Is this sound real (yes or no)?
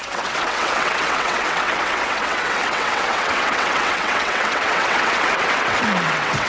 no